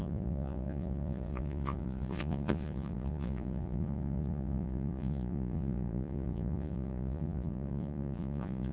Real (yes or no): no